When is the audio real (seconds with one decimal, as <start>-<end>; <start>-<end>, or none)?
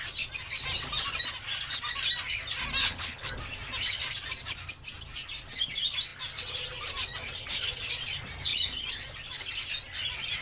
0.0-2.8; 3.3-10.4